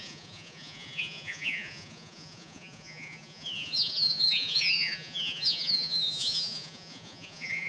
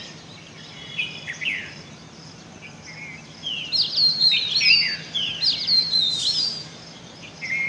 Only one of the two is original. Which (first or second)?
second